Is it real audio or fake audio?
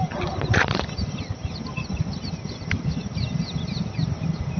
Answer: real